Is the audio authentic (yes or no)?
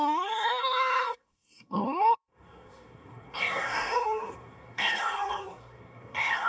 no